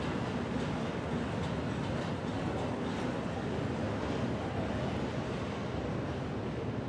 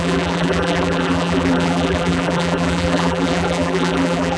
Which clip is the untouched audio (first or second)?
first